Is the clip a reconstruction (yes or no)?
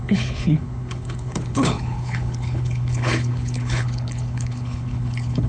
yes